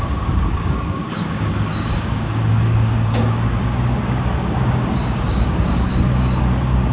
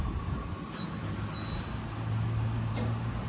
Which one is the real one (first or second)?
second